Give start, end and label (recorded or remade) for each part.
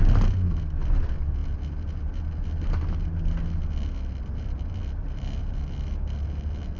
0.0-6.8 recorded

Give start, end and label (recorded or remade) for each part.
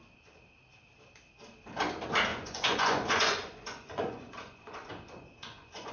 0.0-2.3 recorded; 2.3-5.9 remade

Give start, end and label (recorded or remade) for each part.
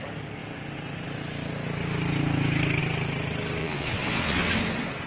0.0-3.6 recorded; 3.6-4.6 remade; 4.6-5.1 recorded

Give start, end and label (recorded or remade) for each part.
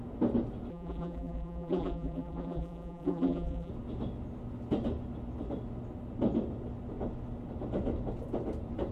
0.0-0.7 recorded; 0.7-3.7 remade; 3.7-8.9 recorded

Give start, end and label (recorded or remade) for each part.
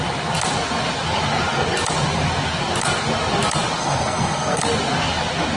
0.0-3.8 recorded; 3.8-4.6 remade; 4.6-5.6 recorded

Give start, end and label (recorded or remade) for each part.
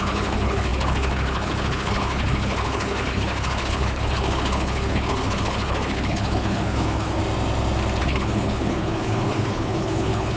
0.0-7.2 remade; 7.2-8.0 recorded; 8.0-10.4 remade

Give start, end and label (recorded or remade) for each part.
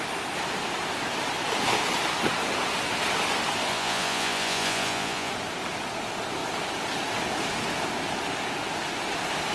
0.0-3.7 recorded; 3.7-5.3 remade; 5.3-9.5 recorded